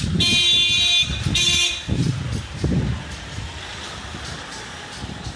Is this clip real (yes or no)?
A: yes